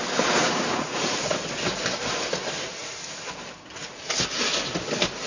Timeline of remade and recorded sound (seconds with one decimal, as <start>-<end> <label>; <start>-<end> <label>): 0.0-0.4 recorded; 0.4-1.5 remade; 1.5-5.3 recorded